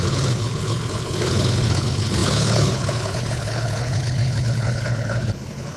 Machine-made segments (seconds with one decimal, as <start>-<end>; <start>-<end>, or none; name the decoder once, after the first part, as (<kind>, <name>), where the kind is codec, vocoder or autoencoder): 0.0-5.8 (codec, HILCodec)